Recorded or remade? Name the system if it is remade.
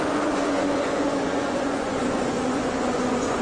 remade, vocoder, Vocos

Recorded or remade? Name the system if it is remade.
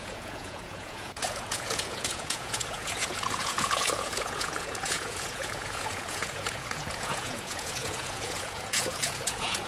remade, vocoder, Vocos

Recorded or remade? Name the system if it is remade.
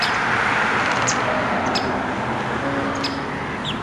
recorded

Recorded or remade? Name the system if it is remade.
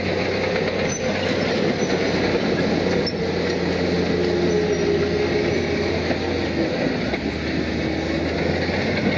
recorded